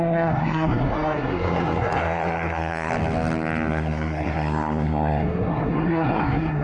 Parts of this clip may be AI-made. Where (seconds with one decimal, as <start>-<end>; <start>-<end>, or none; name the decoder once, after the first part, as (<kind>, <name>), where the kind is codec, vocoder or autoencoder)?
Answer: 0.0-2.9 (codec, SNAC); 3.7-6.6